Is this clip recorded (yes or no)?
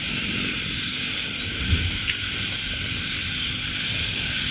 yes